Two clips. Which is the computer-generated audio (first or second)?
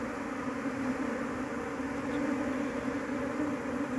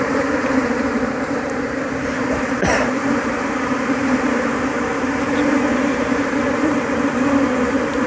second